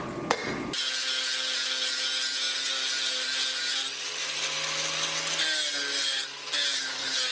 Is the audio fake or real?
real